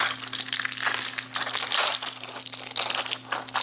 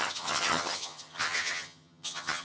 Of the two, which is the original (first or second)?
first